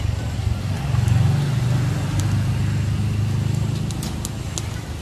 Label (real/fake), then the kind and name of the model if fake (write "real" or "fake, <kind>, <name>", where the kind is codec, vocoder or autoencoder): real